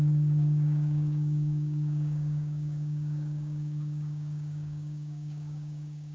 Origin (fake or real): fake